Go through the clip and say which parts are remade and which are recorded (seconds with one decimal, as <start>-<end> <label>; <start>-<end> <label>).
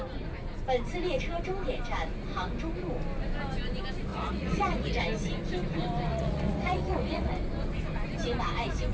0.0-4.1 recorded; 4.1-5.0 remade; 5.0-6.1 recorded; 6.1-7.3 remade; 7.3-8.9 recorded